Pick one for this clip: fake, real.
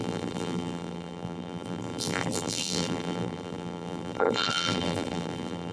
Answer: fake